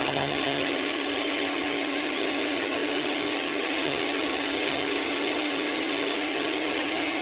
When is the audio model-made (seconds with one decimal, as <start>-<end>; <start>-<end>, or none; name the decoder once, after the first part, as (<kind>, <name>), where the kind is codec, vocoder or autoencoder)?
0.0-7.2 (vocoder, HiFi-GAN)